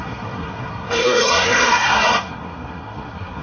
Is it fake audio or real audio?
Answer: fake